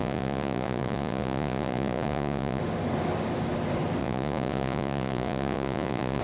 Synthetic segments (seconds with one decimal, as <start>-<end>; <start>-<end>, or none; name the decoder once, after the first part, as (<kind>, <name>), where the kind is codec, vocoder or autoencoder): 0.0-2.6 (vocoder, Vocos); 4.0-6.2